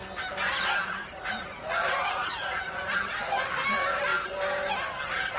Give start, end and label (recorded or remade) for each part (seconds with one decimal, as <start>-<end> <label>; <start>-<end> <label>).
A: 0.0-0.8 recorded; 0.8-3.4 remade; 3.4-5.4 recorded